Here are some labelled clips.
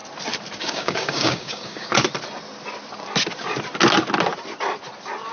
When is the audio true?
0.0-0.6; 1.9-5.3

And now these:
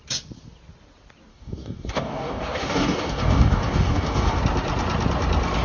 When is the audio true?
0.0-1.3; 4.4-5.6

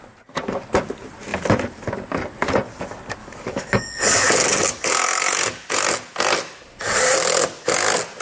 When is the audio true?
0.0-3.2; 5.7-8.2

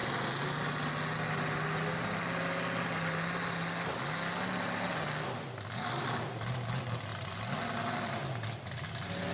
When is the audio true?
0.0-9.3